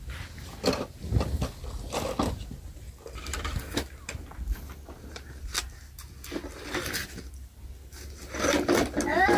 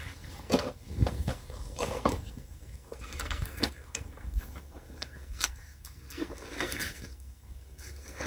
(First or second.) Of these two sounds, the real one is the first